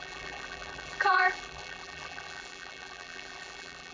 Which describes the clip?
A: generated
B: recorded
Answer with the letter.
A